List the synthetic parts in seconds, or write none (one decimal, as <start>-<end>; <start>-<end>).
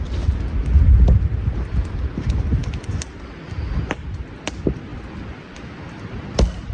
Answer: none